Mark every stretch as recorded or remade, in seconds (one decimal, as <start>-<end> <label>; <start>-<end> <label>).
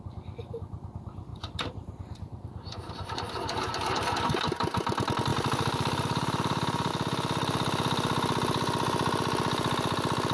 0.0-1.3 recorded; 1.3-4.2 remade; 4.2-5.3 recorded; 5.3-6.9 remade; 6.9-10.3 recorded